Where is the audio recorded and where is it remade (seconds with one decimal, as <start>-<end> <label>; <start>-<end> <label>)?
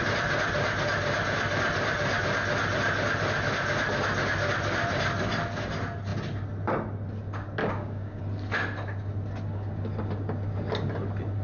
0.0-7.6 recorded; 7.6-8.2 remade; 8.2-11.4 recorded